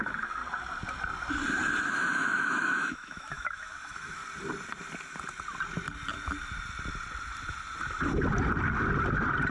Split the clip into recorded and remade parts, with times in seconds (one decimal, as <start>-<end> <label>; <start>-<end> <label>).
0.0-0.4 remade; 0.4-1.8 recorded; 1.8-4.2 remade; 4.2-9.5 recorded